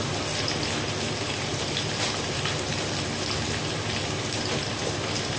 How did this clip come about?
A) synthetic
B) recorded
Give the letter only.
B